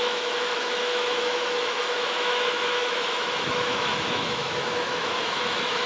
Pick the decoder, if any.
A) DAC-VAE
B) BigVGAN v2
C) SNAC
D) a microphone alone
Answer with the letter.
A